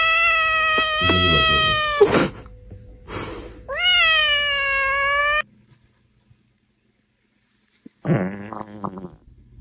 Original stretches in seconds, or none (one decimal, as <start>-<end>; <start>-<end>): 0.0-9.6